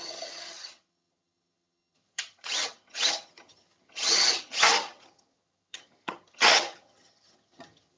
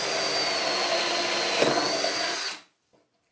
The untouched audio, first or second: second